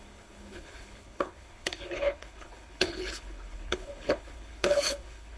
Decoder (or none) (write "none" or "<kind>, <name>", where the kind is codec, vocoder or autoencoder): codec, HILCodec